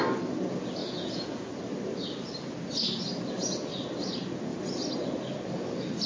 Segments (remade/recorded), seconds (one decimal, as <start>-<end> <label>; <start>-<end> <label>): 0.0-0.8 recorded; 0.8-1.5 remade; 1.5-6.1 recorded